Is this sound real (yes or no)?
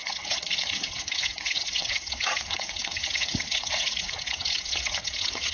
no